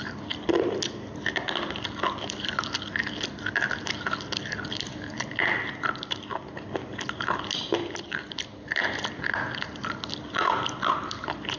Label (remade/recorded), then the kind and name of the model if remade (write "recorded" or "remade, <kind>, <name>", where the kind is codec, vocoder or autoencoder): recorded